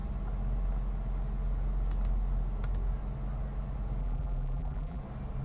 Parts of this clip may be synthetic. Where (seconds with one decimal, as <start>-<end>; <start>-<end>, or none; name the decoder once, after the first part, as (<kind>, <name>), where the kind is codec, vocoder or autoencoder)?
4.0-5.0 (vocoder, BigVGAN v2)